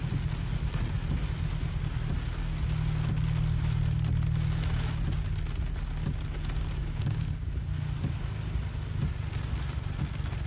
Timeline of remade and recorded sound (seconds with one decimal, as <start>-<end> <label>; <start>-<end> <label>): 0.0-6.8 recorded; 6.8-7.5 remade; 7.5-10.5 recorded